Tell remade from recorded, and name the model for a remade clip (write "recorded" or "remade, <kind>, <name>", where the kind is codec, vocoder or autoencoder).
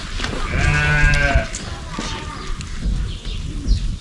recorded